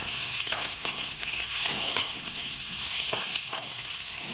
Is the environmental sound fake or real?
fake